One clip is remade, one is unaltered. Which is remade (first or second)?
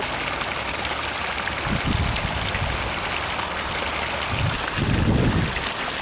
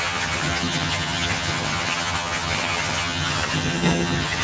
second